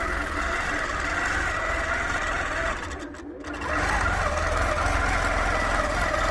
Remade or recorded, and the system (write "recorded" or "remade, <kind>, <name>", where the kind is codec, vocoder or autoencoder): recorded